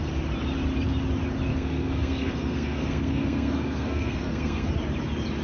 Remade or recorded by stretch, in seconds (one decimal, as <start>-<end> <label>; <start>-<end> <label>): 0.0-1.5 recorded; 1.5-4.7 remade; 4.7-5.4 recorded